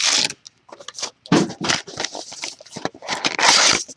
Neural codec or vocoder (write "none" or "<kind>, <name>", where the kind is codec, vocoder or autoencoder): none